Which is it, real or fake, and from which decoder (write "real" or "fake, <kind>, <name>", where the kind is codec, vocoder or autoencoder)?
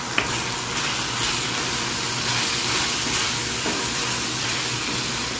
real